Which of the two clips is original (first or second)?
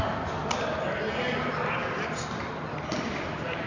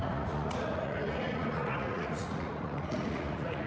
first